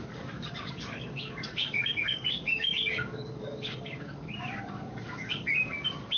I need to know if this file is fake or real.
fake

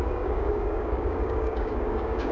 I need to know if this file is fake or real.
fake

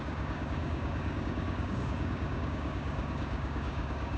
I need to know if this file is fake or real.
fake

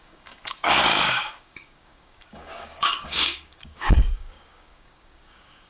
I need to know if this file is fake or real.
fake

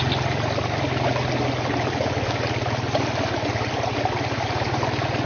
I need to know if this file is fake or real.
real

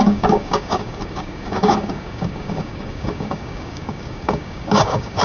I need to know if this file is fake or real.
fake